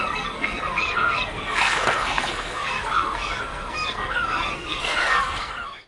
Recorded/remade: remade